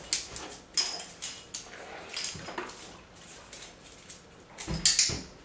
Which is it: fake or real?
real